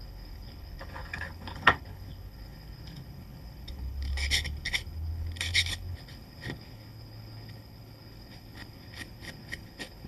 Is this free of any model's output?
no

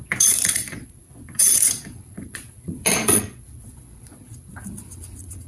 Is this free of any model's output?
no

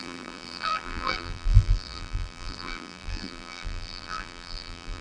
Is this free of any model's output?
no